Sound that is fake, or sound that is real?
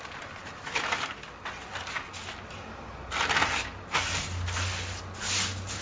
real